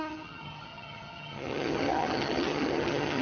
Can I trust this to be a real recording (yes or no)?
no